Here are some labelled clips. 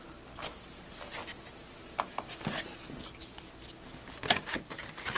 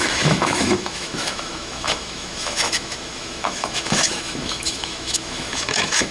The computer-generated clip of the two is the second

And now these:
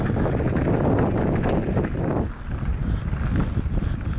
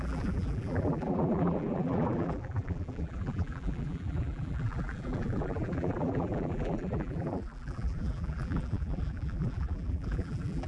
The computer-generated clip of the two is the second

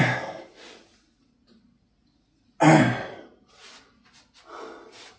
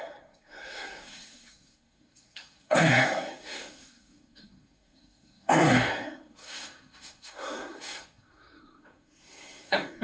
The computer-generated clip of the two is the second